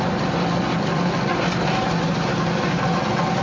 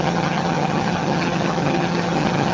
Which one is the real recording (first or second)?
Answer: first